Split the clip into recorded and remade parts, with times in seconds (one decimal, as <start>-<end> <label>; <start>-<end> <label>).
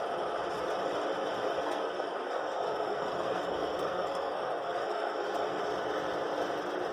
0.0-1.6 recorded; 1.6-5.6 remade; 5.6-6.9 recorded